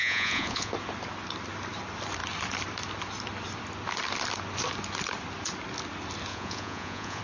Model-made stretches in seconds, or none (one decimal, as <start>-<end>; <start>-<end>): 0.0-0.7; 6.3-7.2